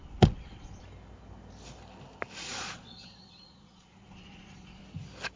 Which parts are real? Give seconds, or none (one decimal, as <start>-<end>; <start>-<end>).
0.8-2.4; 4.8-5.4